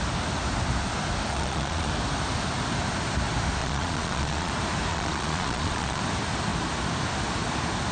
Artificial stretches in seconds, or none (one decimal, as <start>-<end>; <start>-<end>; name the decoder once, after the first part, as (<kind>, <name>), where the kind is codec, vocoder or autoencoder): 1.3-1.9 (vocoder, Vocos); 3.6-4.5; 4.9-6.0